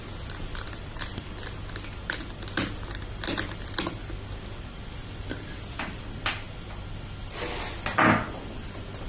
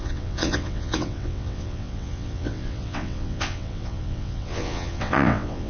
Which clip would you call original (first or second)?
first